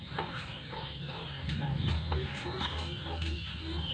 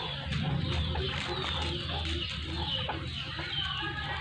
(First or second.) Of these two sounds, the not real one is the first